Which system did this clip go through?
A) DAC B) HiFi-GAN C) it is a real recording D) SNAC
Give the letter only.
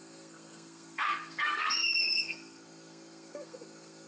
D